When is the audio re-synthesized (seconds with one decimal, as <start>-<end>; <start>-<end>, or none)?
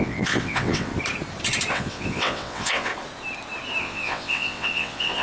0.0-0.9; 1.7-2.9; 3.8-5.2